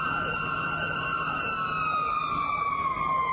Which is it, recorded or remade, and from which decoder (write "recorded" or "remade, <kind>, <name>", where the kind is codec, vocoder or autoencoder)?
recorded